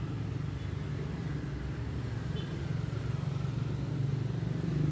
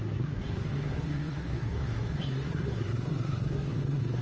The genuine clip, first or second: first